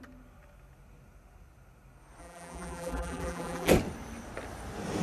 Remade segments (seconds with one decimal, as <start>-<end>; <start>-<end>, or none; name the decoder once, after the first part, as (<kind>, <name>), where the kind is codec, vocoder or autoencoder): 2.2-3.7 (vocoder, BigVGAN v2)